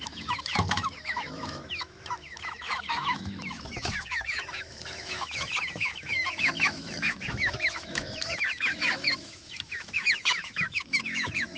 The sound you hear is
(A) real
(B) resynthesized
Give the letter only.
B